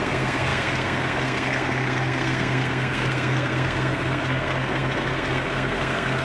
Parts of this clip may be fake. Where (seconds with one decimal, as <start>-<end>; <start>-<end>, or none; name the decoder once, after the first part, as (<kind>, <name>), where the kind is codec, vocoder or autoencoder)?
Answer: 0.0-6.2 (codec, SNAC)